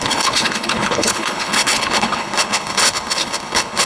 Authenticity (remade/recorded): remade